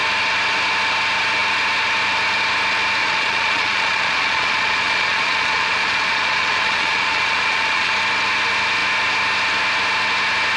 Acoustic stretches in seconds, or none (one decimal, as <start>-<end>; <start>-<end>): 0.0-3.0; 7.9-10.6